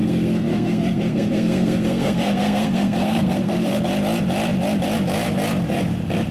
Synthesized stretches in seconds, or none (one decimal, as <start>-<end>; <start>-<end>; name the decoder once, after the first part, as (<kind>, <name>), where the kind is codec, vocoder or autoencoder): 0.0-3.8 (codec, SNAC)